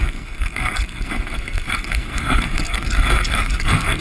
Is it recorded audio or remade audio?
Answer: remade